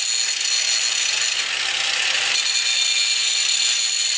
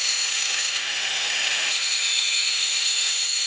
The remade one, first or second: second